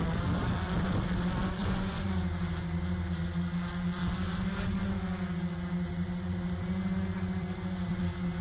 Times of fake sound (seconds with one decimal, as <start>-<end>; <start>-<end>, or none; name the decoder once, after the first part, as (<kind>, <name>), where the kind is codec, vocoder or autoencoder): 1.6-2.1 (vocoder, Vocos); 5.9-8.0